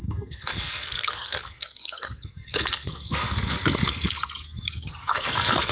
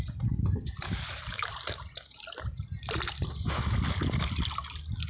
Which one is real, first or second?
second